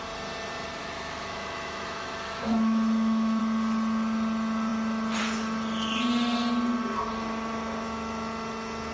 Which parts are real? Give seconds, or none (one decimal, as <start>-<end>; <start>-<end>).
0.0-0.8; 3.4-8.9